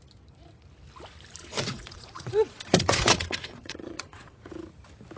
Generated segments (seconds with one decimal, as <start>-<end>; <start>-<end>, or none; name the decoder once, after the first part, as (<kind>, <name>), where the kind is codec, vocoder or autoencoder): 1.4-4.5 (vocoder, Vocos)